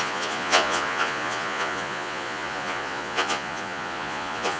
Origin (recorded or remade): remade